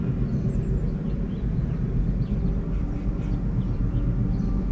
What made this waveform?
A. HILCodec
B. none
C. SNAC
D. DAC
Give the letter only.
B